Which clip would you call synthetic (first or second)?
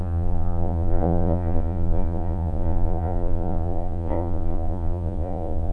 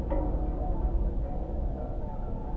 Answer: first